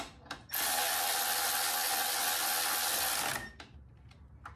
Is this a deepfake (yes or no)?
no